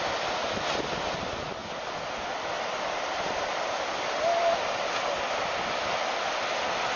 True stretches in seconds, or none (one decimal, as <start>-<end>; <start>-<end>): 0.0-7.0